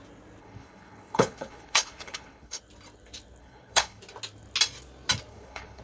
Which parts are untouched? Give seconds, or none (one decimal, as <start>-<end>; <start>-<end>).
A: 0.0-0.4; 2.6-3.4; 4.0-5.3